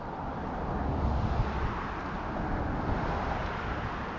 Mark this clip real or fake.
real